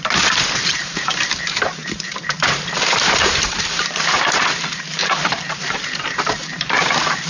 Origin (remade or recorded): remade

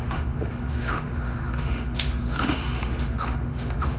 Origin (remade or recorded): remade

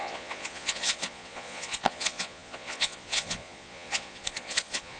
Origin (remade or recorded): remade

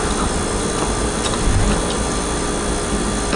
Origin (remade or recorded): recorded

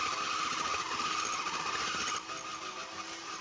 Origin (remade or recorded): recorded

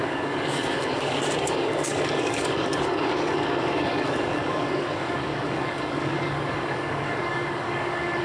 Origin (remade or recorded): remade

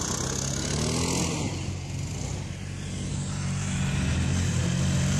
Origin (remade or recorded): recorded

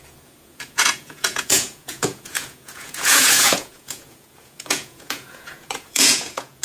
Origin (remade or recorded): remade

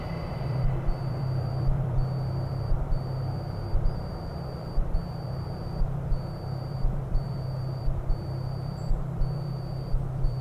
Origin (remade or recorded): remade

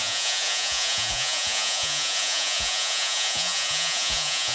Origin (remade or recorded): remade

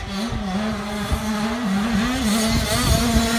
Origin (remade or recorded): recorded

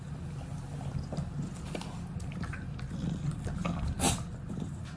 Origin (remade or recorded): recorded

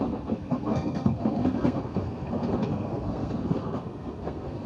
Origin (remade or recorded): remade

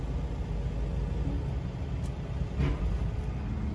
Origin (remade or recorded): recorded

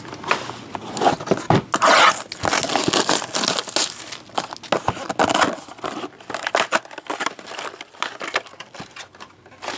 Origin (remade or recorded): recorded